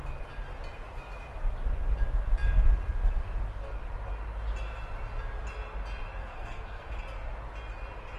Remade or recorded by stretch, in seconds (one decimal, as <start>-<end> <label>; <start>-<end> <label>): 0.0-6.2 recorded; 6.2-7.0 remade; 7.0-8.2 recorded